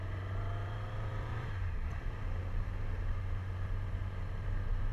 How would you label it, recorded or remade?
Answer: remade